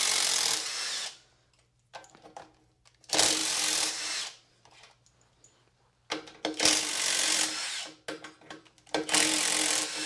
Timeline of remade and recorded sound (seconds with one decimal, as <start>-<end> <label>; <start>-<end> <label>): 0.0-3.4 recorded; 3.4-4.2 remade; 4.2-10.1 recorded